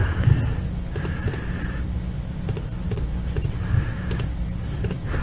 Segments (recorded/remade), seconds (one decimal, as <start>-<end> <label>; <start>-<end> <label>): 0.0-5.2 recorded